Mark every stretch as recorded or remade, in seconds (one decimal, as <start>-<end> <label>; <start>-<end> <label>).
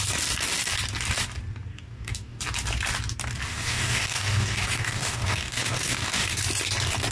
0.0-1.7 recorded; 1.7-2.4 remade; 2.4-3.5 recorded; 3.5-6.4 remade; 6.4-7.1 recorded